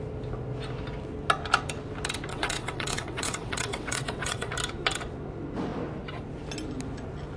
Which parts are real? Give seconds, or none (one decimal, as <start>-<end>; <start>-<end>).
0.0-2.3; 4.5-7.4